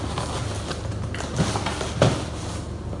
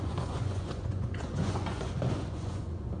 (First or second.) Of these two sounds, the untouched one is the first